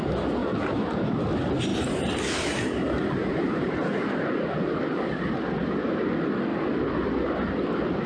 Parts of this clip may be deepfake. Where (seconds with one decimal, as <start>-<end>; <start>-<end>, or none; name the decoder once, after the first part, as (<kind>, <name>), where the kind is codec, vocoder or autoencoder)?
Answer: 0.4-1.2 (vocoder, BigVGAN v2); 1.7-5.4; 6.5-7.1